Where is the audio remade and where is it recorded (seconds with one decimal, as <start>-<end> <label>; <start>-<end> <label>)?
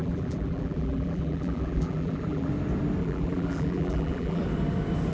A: 0.0-2.5 remade; 2.5-3.0 recorded; 3.0-4.4 remade; 4.4-5.1 recorded